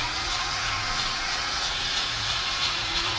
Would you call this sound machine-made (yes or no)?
yes